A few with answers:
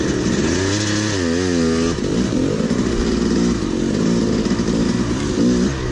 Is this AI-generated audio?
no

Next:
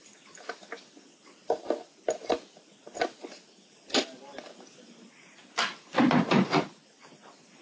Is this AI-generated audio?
yes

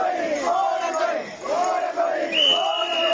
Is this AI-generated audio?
no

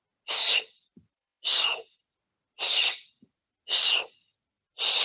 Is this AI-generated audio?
no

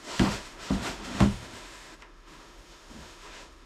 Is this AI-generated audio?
yes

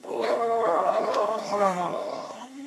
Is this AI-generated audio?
yes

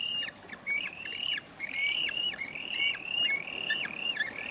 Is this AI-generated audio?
yes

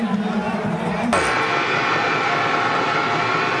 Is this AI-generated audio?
no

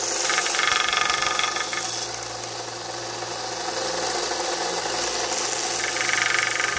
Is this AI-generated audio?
no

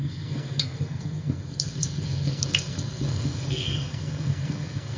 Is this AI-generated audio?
yes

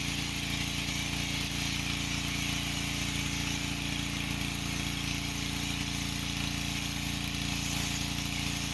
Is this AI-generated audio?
no